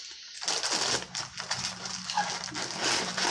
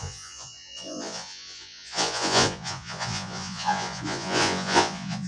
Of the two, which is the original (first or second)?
first